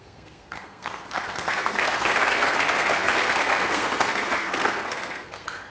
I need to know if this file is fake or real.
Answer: fake